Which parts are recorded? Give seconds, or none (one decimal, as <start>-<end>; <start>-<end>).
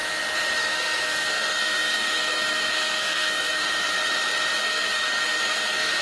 0.0-0.6; 4.0-4.6